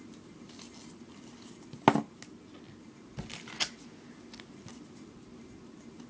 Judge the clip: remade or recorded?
recorded